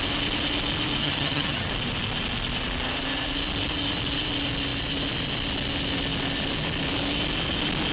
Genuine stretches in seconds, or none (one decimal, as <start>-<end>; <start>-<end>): 0.0-1.0; 1.7-7.9